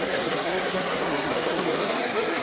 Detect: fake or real fake